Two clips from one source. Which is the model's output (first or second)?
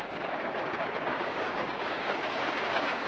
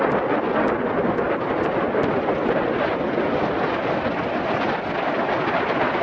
first